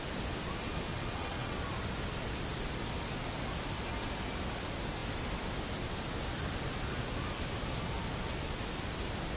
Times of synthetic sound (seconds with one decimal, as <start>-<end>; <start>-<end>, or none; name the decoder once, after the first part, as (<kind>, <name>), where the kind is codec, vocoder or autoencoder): 0.9-1.6 (vocoder, WaveNeXt)